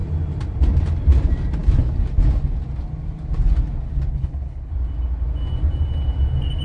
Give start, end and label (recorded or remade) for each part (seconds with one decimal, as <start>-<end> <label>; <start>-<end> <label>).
0.0-4.1 recorded; 4.1-4.7 remade; 4.7-6.6 recorded